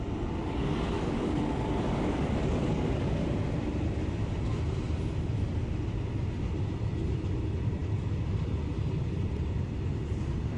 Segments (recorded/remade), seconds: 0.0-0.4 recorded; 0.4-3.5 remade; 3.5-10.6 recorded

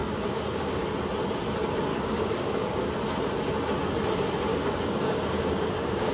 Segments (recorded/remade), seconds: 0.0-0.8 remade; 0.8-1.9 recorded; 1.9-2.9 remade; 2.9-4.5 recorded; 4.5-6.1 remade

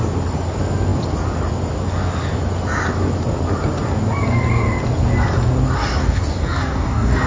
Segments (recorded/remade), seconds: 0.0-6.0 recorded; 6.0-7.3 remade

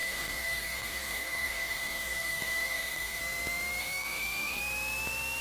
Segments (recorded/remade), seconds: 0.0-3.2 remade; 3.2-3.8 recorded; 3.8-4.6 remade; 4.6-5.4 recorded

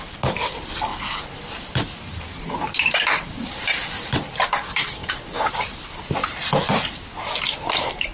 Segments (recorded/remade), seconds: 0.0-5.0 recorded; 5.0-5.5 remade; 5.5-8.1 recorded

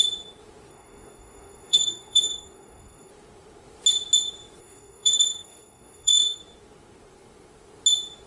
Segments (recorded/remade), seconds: 0.0-0.7 recorded; 0.7-3.1 remade; 3.1-4.6 recorded; 4.6-6.4 remade; 6.4-8.3 recorded